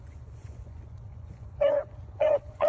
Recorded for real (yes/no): no